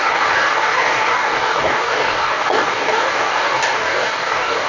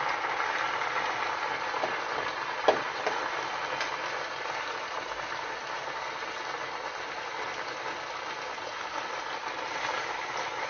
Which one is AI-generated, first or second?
first